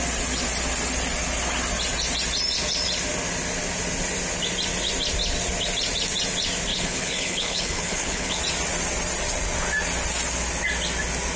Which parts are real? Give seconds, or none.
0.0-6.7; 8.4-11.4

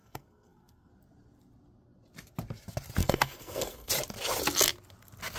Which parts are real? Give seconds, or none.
0.9-3.0; 3.9-5.4

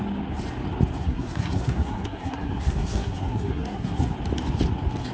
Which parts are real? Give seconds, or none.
0.0-1.0; 4.1-5.1

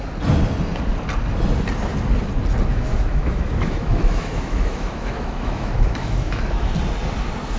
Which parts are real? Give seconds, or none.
0.0-2.7; 6.7-7.6

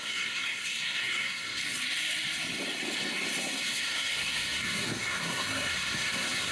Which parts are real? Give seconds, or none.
1.6-3.4

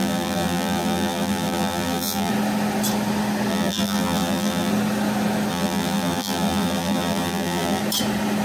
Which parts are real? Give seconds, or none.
2.3-3.5; 4.7-5.5; 7.8-8.4

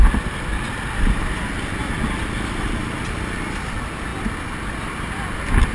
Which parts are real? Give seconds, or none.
0.0-5.7

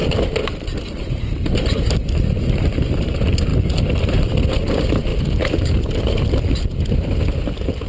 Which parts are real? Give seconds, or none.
0.0-7.9